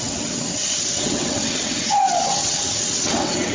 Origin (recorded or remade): remade